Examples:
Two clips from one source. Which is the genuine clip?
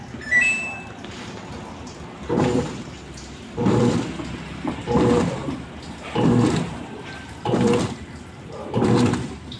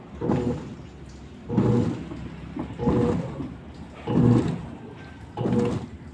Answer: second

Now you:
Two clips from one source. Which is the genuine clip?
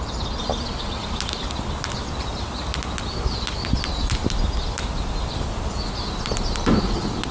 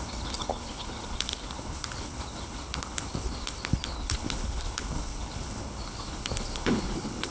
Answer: first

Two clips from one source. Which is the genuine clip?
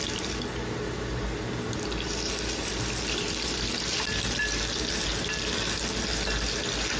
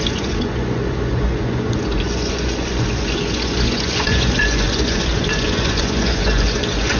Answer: first